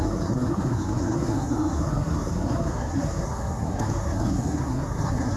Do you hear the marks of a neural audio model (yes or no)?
yes